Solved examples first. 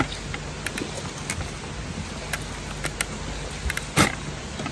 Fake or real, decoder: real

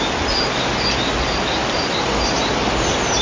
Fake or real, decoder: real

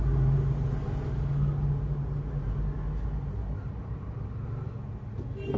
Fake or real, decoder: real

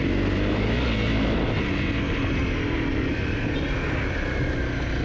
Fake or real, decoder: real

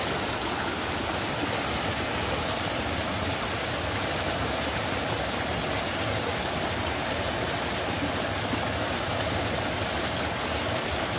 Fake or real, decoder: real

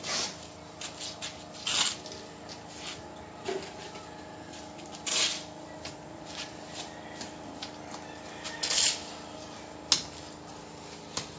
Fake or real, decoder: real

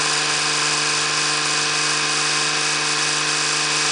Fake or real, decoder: real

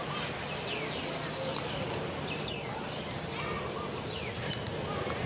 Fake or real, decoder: real